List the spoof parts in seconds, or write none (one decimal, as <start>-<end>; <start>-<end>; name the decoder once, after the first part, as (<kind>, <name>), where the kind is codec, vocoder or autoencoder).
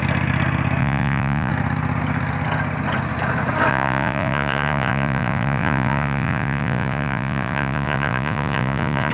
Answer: 0.8-1.5 (vocoder, Vocos); 3.7-9.1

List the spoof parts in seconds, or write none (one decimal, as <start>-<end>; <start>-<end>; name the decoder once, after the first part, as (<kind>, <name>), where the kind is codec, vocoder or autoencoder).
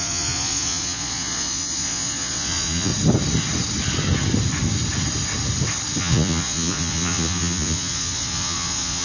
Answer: 0.0-2.9 (vocoder, Vocos); 6.0-9.0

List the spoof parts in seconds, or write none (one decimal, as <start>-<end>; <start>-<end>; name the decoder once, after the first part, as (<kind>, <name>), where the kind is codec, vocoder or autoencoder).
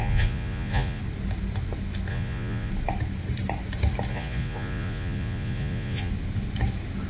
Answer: 0.0-1.0 (vocoder, Vocos); 2.1-2.7; 4.1-6.1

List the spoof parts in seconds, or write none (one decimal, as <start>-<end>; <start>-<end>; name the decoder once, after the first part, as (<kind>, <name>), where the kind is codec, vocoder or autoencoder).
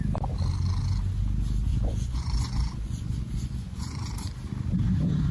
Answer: 1.7-4.1 (vocoder, Vocos)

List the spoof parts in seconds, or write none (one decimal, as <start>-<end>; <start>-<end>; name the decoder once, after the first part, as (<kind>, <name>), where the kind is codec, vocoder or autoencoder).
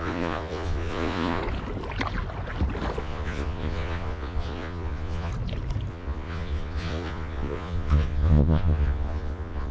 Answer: 0.0-1.4 (vocoder, Vocos); 3.0-5.3; 5.9-9.7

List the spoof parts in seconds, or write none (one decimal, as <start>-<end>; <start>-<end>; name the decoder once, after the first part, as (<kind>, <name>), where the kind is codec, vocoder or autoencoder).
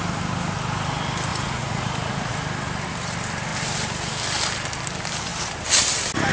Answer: 1.3-2.3 (vocoder, Vocos)